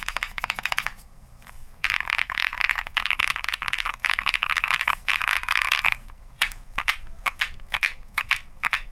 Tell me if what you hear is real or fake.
fake